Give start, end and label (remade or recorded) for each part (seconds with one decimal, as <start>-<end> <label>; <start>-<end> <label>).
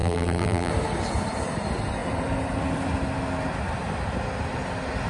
0.0-0.7 remade; 0.7-5.1 recorded